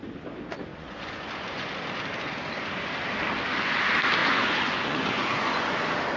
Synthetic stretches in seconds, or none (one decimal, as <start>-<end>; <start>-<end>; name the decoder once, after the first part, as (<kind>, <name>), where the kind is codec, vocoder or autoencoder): 0.7-1.7 (vocoder, Vocos); 4.2-5.8